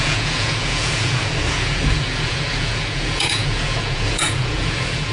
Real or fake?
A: fake